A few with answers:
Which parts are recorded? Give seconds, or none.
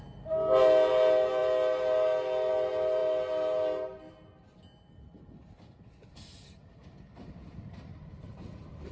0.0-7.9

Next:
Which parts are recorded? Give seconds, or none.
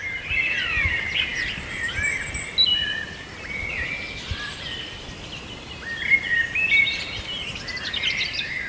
0.0-8.7